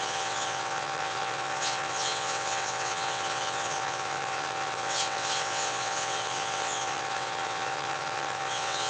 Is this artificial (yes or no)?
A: yes